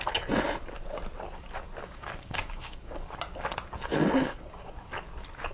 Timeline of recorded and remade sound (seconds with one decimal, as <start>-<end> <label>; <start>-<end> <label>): 0.0-1.8 recorded; 1.8-3.1 remade; 3.1-4.2 recorded; 4.2-4.9 remade; 4.9-5.5 recorded